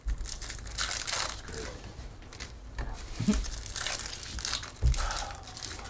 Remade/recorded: recorded